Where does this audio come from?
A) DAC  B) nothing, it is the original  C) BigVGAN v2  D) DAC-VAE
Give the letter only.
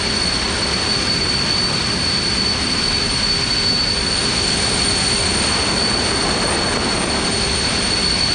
B